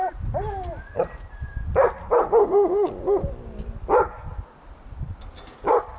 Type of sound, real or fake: real